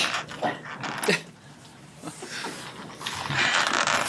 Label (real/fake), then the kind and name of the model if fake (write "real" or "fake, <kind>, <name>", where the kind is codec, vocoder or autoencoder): real